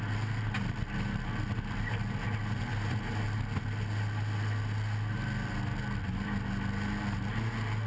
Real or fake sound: real